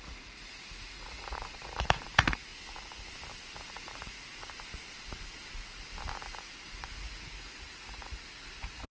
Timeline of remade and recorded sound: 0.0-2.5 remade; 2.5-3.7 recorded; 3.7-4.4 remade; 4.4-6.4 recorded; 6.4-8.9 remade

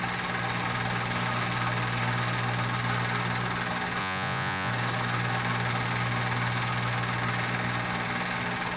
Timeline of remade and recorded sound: 0.0-4.0 recorded; 4.0-4.7 remade; 4.7-8.8 recorded

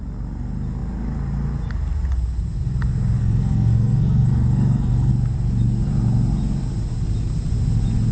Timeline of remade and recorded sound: 0.0-3.2 recorded; 3.2-5.1 remade; 5.1-8.1 recorded

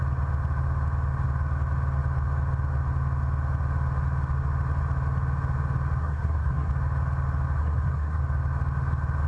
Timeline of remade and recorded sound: 0.0-6.0 recorded; 6.0-6.7 remade; 6.7-7.6 recorded; 7.6-8.2 remade; 8.2-9.3 recorded

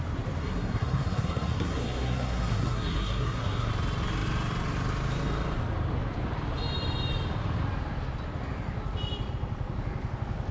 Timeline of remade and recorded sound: 0.0-0.4 recorded; 0.4-3.7 remade; 3.7-10.5 recorded

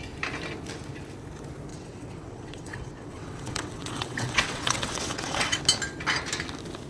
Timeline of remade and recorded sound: 0.0-1.7 recorded; 1.7-5.6 remade; 5.6-6.9 recorded

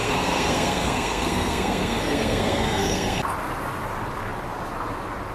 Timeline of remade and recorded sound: 0.0-3.2 remade; 3.2-5.3 recorded

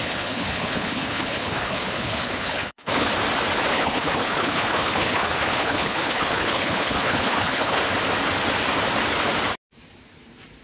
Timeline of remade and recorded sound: 0.0-3.1 remade; 3.1-3.7 recorded; 3.7-7.8 remade; 7.8-10.6 recorded